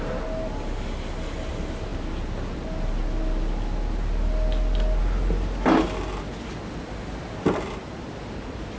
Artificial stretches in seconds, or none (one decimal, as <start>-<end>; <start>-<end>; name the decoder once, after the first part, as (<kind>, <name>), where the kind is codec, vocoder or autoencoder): none